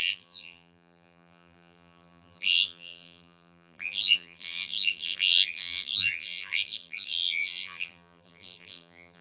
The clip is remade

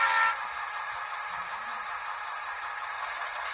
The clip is remade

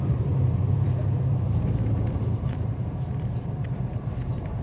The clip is remade